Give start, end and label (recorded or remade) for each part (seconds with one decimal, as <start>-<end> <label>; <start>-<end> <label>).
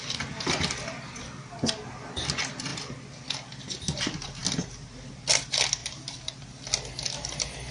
0.0-7.7 recorded